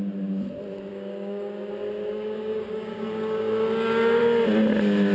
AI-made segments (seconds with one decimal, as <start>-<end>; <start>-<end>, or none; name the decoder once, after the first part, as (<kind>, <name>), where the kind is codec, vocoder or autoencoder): 0.9-1.7 (codec, DAC); 2.1-4.2